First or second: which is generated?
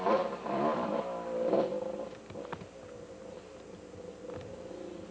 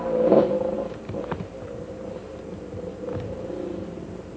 second